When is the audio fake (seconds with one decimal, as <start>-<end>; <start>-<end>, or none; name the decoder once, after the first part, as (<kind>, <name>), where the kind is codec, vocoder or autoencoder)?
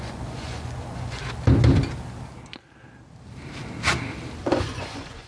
0.0-1.2 (vocoder, Vocos); 4.4-5.3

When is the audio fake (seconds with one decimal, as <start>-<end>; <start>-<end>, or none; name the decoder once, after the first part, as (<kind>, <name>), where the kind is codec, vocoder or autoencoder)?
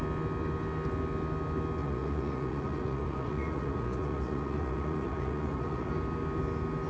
1.8-5.9 (vocoder, Vocos)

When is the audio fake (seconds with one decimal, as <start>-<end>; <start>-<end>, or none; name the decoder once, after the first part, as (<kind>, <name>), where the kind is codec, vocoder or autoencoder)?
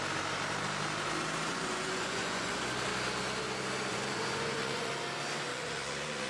1.5-2.5 (vocoder, Vocos); 3.9-4.9; 5.5-6.3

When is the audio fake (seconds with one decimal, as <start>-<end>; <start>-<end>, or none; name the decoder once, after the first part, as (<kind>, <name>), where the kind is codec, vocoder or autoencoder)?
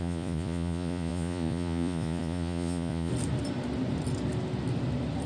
0.0-3.1 (vocoder, Vocos)